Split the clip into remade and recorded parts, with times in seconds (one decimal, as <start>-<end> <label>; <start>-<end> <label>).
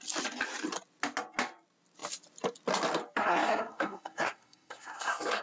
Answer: 0.0-3.2 recorded; 3.2-5.4 remade